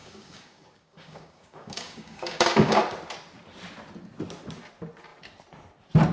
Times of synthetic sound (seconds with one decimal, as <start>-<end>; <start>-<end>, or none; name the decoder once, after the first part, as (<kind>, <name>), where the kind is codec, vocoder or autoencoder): 0.0-2.8 (codec, DAC)